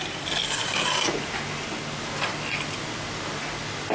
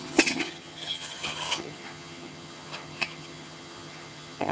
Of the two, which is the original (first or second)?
first